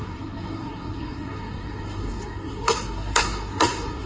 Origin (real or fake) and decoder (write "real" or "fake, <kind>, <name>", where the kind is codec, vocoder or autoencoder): fake, codec, SNAC